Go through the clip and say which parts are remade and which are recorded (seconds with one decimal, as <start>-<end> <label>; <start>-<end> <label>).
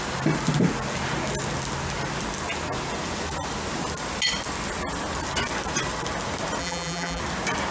0.0-6.6 recorded; 6.6-7.2 remade; 7.2-7.7 recorded